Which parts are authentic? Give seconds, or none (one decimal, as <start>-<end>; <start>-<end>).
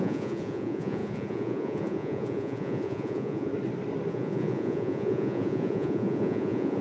3.5-4.1